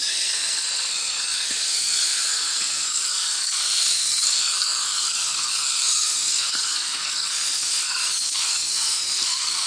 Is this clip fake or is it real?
fake